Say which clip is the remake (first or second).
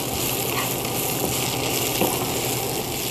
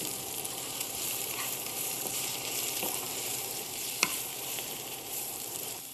second